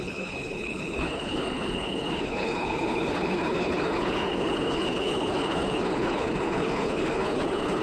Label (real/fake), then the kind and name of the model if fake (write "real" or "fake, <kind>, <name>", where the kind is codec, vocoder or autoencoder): fake, codec, HILCodec